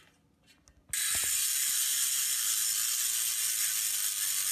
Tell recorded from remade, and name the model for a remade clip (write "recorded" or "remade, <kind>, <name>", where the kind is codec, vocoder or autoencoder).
recorded